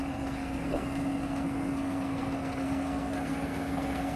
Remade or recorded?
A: remade